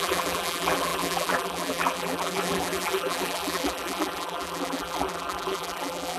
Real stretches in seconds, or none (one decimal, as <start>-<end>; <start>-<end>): none

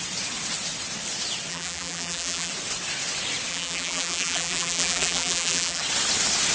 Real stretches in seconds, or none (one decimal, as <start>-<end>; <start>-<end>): 0.0-1.5; 2.5-3.5; 5.8-6.5